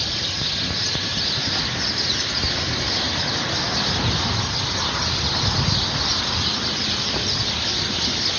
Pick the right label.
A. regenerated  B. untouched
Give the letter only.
B